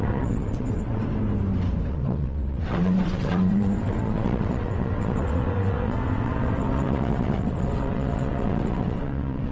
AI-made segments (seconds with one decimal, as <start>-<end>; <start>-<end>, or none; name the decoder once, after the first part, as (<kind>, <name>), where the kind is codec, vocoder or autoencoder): 0.0-1.0 (vocoder, WaveNeXt); 1.9-9.5